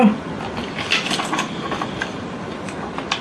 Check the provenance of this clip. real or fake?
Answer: real